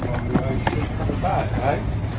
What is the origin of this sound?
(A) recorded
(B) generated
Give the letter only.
A